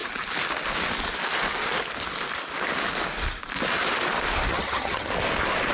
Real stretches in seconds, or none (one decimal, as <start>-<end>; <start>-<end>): 0.0-4.5; 5.1-5.7